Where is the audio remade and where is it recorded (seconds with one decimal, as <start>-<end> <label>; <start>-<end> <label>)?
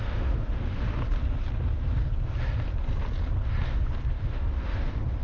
0.0-1.0 remade; 1.0-4.1 recorded; 4.1-5.2 remade